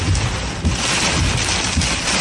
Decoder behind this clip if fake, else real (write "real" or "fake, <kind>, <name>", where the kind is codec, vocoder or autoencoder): real